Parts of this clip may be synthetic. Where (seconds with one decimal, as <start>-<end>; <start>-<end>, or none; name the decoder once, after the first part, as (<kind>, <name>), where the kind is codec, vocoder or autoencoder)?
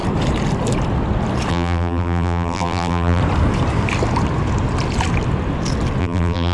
1.5-3.2 (vocoder, BigVGAN v2); 6.0-6.5